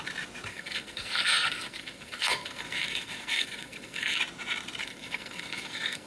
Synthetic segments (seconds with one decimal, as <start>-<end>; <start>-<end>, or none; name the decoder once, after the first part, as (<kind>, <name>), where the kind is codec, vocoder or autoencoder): 0.5-4.2 (codec, SNAC); 4.8-6.1